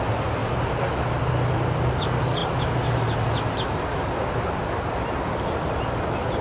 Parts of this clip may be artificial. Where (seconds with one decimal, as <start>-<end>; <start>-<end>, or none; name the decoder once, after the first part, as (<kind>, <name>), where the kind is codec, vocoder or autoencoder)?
none